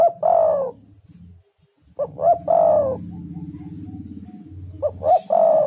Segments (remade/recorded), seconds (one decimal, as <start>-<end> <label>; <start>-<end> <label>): 0.0-5.7 recorded